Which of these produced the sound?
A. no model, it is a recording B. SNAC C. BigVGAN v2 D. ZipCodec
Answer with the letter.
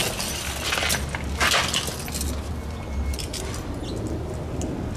A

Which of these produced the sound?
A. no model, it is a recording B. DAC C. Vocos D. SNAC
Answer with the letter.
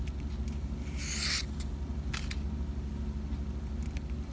A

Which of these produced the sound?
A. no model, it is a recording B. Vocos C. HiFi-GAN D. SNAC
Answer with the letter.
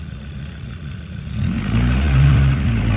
B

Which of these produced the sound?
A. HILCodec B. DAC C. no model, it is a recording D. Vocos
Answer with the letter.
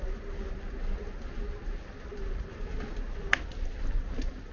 C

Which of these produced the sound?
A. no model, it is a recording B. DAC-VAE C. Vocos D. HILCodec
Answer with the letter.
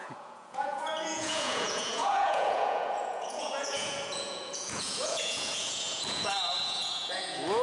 C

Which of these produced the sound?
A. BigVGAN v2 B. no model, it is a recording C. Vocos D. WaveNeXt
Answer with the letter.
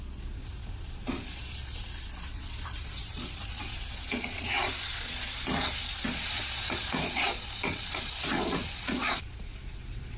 C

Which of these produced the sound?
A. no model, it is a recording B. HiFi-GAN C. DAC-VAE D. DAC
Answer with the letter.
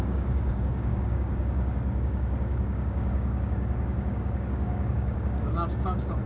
D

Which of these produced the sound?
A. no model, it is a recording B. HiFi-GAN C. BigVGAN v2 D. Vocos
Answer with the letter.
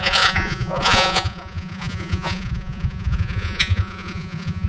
D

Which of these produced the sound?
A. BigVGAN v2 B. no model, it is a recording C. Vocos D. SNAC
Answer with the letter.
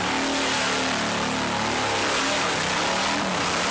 B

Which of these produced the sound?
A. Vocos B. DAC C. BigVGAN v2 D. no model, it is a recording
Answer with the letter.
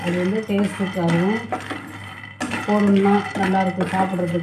D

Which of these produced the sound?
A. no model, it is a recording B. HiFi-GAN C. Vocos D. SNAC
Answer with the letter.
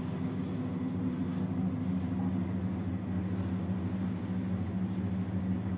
A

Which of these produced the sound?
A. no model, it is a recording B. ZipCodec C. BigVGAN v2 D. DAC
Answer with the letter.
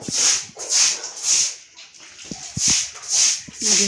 A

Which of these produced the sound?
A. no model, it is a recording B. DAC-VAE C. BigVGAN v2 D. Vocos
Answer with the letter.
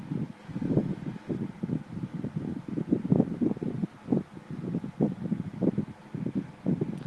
A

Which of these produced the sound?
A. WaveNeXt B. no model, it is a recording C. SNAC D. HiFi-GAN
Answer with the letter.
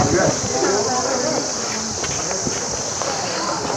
B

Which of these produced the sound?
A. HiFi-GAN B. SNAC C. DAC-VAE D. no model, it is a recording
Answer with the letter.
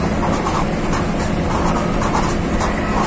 D